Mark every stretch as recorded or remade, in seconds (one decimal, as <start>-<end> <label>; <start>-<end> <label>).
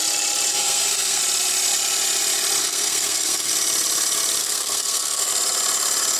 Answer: 0.0-0.5 recorded; 0.5-1.2 remade; 1.2-2.6 recorded; 2.6-3.5 remade; 3.5-4.4 recorded; 4.4-5.3 remade; 5.3-6.2 recorded